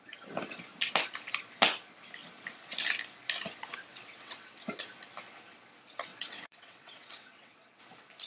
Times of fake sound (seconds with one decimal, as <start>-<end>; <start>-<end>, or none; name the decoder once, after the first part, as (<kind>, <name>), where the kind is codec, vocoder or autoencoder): 3.9-4.8 (vocoder, WaveNeXt); 6.1-7.8